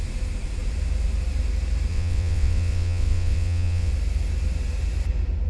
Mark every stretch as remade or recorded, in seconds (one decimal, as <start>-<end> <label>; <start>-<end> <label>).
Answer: 0.0-1.9 recorded; 1.9-3.9 remade; 3.9-5.5 recorded